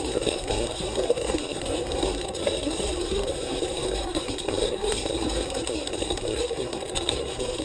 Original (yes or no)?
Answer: no